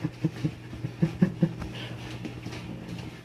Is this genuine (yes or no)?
yes